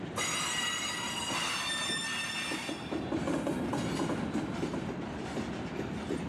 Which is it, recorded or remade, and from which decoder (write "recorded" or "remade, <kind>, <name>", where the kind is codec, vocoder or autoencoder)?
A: recorded